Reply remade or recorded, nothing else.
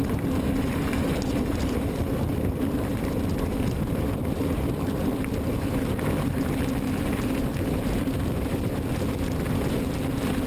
recorded